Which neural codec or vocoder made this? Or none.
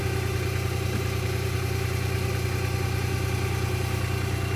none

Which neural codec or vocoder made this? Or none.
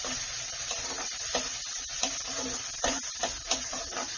none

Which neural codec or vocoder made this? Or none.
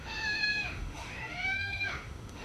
autoencoder, DAC-VAE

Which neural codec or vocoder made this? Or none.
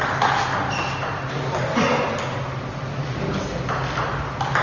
none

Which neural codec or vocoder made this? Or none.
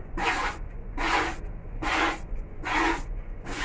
vocoder, Vocos